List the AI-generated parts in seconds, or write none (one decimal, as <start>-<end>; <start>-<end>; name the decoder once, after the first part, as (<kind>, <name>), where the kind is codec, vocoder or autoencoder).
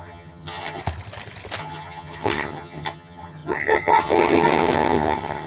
0.0-0.8 (vocoder, HiFi-GAN); 1.6-5.5